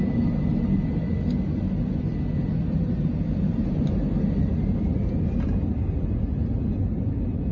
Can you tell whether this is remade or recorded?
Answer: recorded